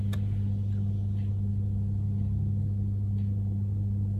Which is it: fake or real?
real